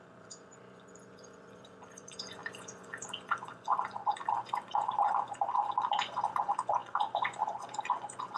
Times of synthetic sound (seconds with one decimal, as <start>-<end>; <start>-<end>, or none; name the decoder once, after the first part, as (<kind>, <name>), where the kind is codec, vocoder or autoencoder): 0.0-8.4 (vocoder, Vocos)